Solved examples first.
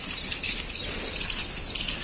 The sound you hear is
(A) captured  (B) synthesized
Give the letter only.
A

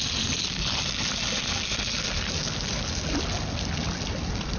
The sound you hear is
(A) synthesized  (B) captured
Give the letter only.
B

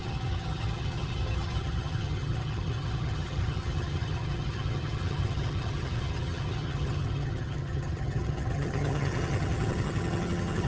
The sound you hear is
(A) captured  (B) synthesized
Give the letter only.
B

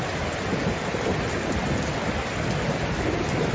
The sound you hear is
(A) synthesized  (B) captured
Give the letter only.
B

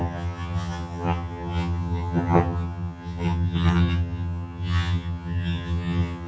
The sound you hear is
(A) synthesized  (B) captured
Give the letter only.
A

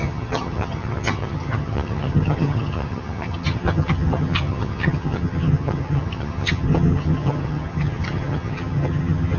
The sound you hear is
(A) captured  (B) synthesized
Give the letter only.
B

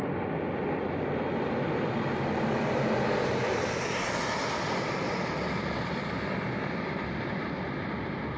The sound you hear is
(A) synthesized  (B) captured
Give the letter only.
B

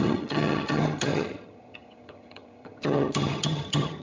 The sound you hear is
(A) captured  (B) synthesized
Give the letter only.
B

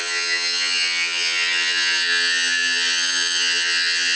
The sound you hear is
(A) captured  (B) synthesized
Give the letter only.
B